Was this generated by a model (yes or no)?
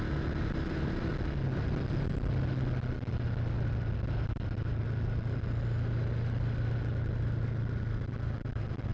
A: no